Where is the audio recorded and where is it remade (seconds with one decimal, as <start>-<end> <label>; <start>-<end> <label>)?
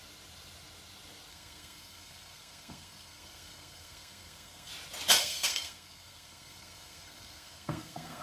0.0-1.3 recorded; 1.3-4.7 remade; 4.7-5.2 recorded; 5.2-8.2 remade